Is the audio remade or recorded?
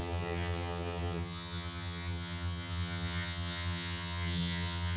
remade